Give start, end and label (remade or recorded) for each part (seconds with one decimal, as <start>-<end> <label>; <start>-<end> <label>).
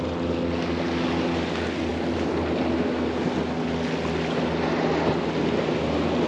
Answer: 0.0-6.3 recorded